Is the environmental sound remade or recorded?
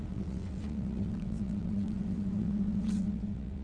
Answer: remade